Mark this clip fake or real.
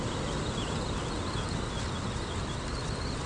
real